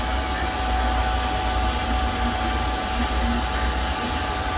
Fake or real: real